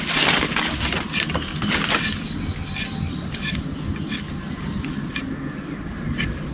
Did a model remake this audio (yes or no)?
no